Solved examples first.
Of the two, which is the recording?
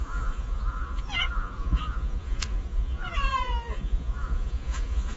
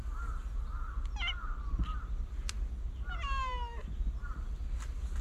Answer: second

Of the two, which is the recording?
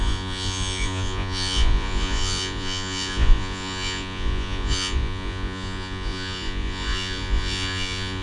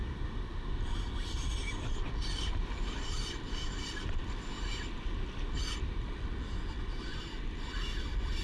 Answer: second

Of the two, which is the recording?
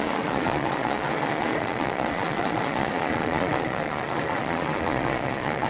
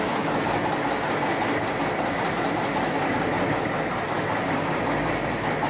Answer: second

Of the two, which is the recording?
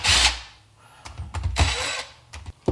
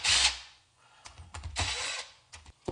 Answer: first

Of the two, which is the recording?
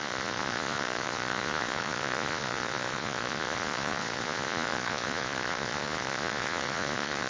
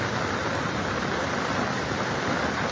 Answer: second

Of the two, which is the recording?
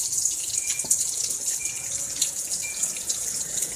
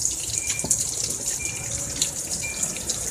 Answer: second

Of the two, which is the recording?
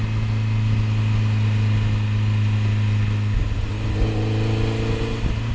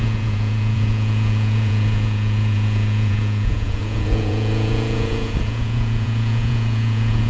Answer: first